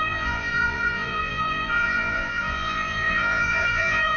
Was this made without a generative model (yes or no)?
no